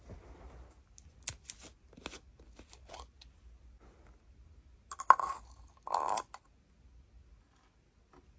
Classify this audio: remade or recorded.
recorded